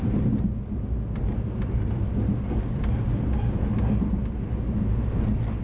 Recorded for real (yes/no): yes